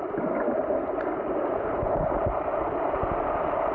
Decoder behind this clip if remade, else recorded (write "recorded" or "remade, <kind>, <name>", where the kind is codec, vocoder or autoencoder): recorded